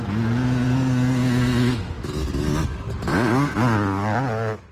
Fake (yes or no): no